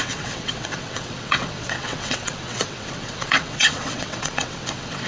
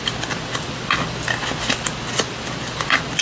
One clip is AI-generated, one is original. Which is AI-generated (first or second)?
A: first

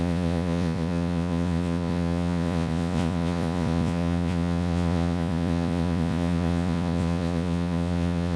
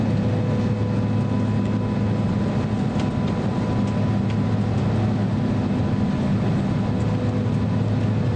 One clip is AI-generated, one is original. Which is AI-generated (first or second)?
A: first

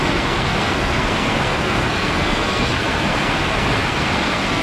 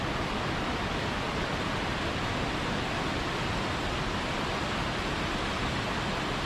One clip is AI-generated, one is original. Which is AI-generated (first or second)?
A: first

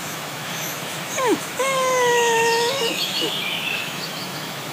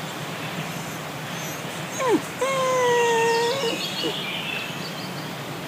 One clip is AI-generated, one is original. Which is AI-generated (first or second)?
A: first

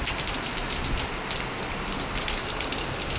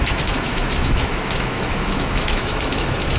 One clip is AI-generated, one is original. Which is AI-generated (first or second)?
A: second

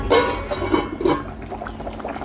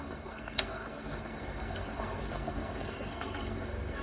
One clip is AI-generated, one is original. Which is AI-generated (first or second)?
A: second